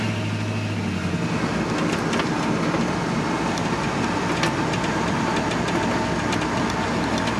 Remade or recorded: recorded